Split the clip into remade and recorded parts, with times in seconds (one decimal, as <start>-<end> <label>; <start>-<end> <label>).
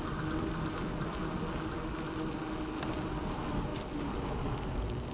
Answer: 0.0-5.1 recorded